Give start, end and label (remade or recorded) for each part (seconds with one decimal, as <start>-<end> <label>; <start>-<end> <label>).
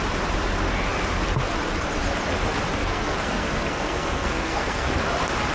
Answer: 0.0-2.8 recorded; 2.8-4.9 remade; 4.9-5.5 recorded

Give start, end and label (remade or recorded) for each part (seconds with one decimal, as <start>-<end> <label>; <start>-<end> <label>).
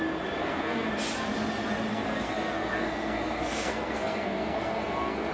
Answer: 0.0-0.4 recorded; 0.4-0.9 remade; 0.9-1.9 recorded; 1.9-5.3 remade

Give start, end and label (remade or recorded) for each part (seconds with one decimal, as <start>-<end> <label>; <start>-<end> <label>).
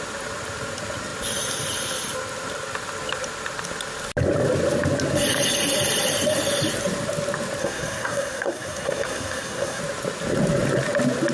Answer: 0.0-7.6 recorded; 7.6-9.8 remade; 9.8-11.3 recorded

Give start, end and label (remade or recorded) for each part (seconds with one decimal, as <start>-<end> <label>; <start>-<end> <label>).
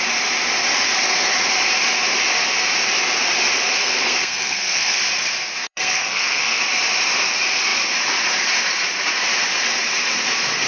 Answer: 0.0-3.8 recorded; 3.8-5.0 remade; 5.0-5.6 recorded; 5.6-6.6 remade; 6.6-10.7 recorded